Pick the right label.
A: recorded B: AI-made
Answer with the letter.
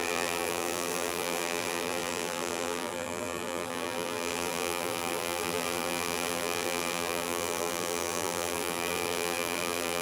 B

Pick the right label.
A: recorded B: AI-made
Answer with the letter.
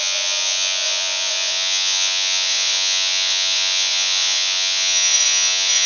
B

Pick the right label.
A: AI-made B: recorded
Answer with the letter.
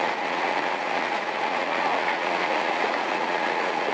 A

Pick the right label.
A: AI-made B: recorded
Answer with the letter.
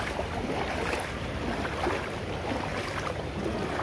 B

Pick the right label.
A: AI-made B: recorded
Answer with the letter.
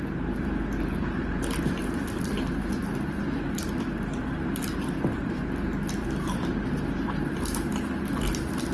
B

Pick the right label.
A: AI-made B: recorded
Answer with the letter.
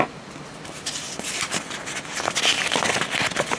B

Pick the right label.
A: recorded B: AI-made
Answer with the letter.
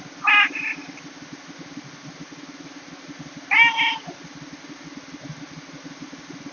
A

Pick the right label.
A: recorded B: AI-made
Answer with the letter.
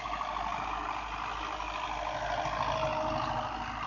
A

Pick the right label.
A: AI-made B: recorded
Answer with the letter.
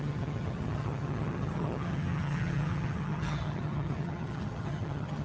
A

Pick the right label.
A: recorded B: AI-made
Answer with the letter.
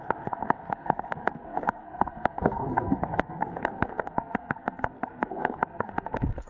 B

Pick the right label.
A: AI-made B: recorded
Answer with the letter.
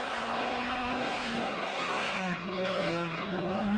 A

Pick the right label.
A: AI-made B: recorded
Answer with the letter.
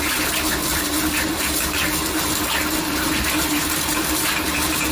A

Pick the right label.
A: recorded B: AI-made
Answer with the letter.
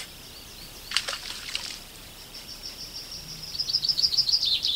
B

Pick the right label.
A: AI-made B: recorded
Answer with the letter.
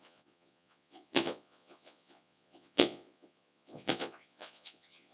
A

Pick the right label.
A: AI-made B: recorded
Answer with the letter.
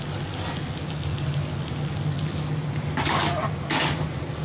B